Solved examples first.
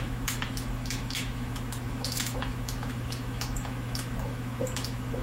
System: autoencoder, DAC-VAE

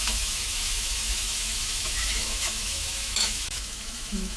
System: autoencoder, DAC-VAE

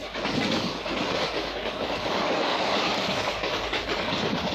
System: codec, DAC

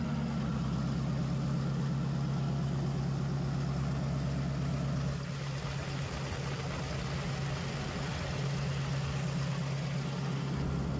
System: none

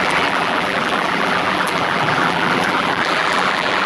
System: vocoder, BigVGAN v2